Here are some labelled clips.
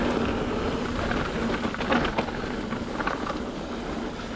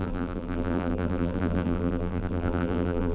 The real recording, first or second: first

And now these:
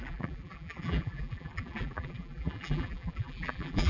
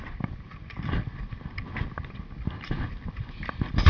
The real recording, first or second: second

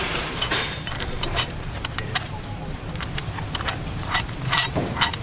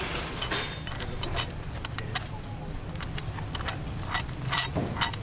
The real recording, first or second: second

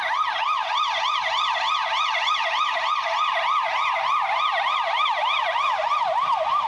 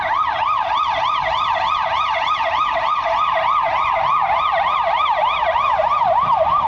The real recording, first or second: first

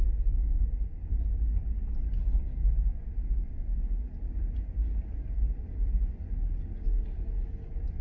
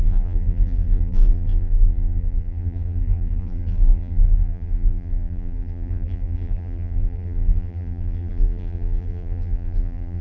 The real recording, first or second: first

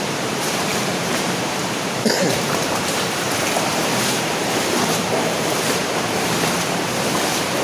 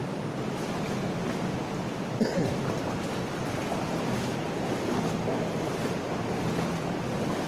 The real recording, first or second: second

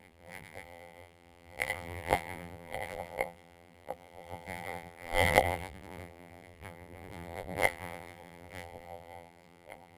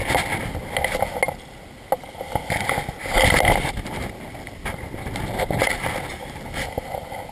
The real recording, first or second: second